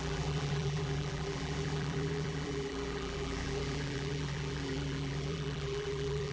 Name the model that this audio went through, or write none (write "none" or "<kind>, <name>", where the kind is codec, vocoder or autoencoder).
vocoder, BigVGAN v2